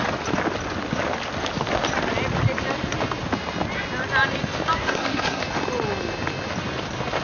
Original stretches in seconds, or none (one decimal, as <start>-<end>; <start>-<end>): 0.0-4.8; 5.4-7.2